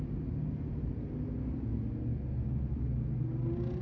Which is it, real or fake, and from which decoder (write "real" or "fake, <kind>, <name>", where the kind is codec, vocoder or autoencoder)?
real